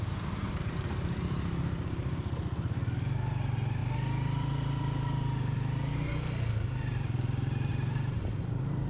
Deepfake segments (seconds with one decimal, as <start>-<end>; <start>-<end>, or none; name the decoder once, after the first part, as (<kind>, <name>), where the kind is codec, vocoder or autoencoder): 7.7-8.5 (vocoder, BigVGAN v2)